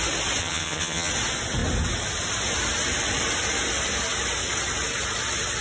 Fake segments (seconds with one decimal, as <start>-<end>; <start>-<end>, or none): 0.4-1.1